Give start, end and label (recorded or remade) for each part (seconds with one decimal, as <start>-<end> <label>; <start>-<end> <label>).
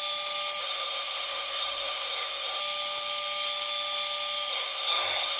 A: 0.0-0.6 recorded; 0.6-2.6 remade; 2.6-4.5 recorded; 4.5-5.4 remade